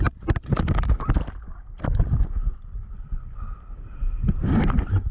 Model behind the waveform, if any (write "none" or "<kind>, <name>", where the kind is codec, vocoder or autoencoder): none